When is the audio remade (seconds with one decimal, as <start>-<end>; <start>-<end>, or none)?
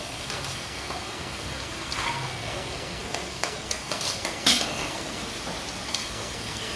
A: 0.0-5.2; 5.9-6.8